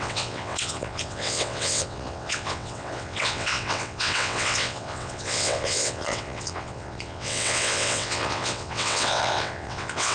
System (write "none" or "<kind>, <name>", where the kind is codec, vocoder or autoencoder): vocoder, WaveNeXt